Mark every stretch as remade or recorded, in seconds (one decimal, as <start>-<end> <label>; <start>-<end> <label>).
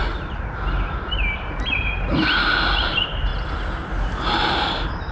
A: 0.0-2.8 recorded; 2.8-3.3 remade; 3.3-3.9 recorded; 3.9-5.1 remade